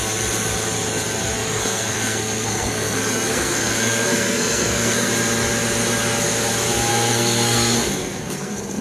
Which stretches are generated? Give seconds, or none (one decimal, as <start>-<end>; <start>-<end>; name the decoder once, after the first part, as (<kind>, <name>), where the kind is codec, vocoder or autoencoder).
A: 1.4-5.1 (codec, SNAC); 6.9-8.8